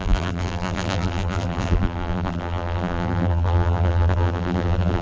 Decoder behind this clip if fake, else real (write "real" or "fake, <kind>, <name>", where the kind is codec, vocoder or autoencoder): fake, vocoder, BigVGAN v2